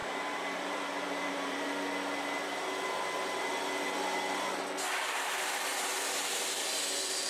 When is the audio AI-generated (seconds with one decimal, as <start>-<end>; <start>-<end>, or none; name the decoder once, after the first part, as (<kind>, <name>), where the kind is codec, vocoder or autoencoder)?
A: 0.0-1.7 (vocoder, BigVGAN v2)